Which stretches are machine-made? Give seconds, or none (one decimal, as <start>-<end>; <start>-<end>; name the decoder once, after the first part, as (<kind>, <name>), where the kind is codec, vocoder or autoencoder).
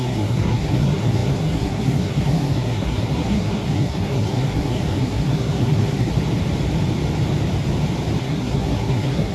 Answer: 0.0-6.1 (codec, SNAC); 8.2-9.3